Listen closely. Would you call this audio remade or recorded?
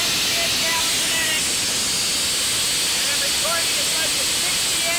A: recorded